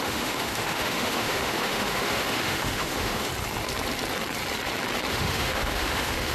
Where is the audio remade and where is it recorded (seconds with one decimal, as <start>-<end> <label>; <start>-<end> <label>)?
0.0-3.3 remade; 3.3-5.1 recorded; 5.1-6.3 remade